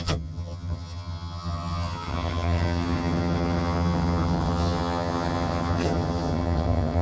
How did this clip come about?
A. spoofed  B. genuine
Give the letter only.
A